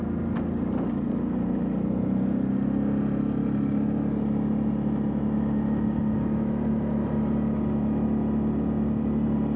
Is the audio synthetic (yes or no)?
no